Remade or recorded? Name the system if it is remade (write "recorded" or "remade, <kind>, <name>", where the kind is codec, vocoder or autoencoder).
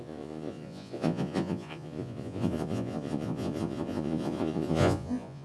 remade, vocoder, Vocos